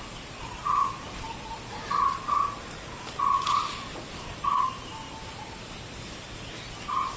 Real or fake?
real